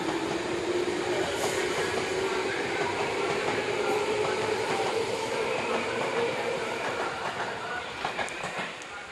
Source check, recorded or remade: remade